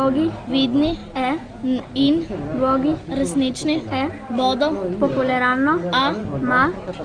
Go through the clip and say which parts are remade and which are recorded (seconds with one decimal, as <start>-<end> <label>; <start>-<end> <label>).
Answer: 0.0-7.0 recorded